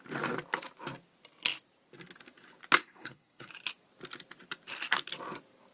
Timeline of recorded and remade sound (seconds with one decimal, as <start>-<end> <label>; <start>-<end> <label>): 0.0-2.8 recorded; 2.8-3.5 remade; 3.5-5.7 recorded

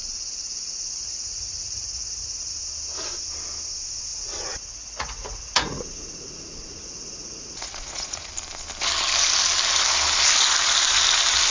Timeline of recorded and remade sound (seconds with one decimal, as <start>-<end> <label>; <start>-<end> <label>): 0.0-2.5 remade; 2.5-4.1 recorded; 4.1-8.3 remade; 8.3-11.5 recorded

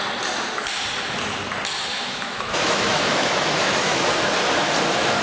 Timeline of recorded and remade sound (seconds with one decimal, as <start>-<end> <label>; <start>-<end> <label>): 0.0-1.9 recorded; 1.9-4.1 remade; 4.1-5.2 recorded